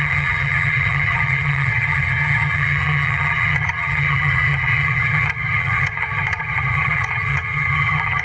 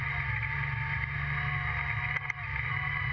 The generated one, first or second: first